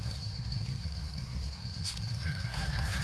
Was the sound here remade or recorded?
remade